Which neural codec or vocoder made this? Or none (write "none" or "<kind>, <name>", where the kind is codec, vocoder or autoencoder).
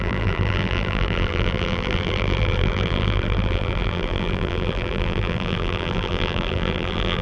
vocoder, BigVGAN v2